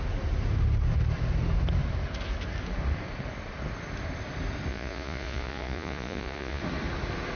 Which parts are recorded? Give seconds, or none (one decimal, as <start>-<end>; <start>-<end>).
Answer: 0.0-4.7; 6.6-7.4